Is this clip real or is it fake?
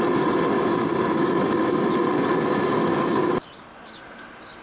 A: real